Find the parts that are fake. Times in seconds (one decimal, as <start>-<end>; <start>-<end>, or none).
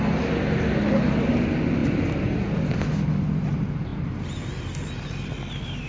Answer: none